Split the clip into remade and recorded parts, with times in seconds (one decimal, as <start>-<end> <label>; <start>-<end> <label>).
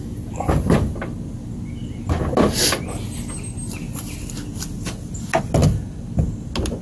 0.0-6.8 recorded